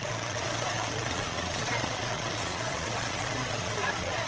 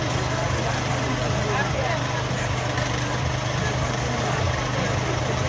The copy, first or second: first